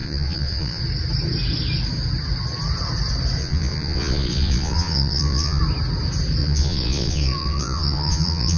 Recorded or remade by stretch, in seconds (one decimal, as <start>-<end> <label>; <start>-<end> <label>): 0.0-0.8 remade; 0.8-3.4 recorded; 3.4-5.6 remade; 5.6-6.4 recorded; 6.4-8.6 remade